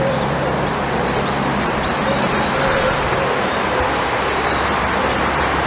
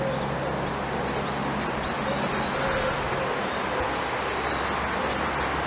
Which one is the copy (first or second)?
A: first